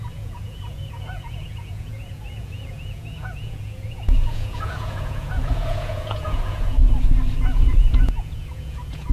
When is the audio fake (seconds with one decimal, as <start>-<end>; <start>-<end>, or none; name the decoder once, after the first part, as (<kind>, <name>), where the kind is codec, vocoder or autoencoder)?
0.0-6.8 (vocoder, Vocos); 7.4-9.1